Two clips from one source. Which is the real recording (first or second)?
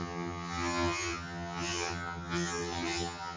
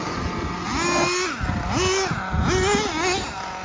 second